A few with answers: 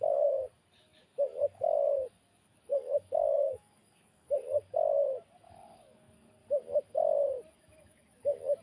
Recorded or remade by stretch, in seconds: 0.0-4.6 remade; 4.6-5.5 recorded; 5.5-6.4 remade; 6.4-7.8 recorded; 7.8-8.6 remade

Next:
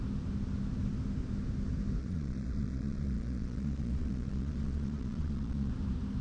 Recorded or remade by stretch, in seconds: 0.0-2.0 recorded; 2.0-5.7 remade; 5.7-6.2 recorded

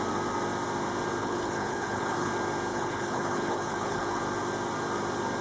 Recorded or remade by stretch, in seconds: 0.0-1.2 recorded; 1.2-2.3 remade; 2.3-2.7 recorded; 2.7-4.2 remade; 4.2-5.4 recorded